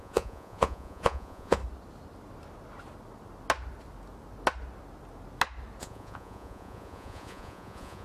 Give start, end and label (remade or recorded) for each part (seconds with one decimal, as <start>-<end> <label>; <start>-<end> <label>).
0.0-1.6 remade; 1.6-5.8 recorded; 5.8-8.0 remade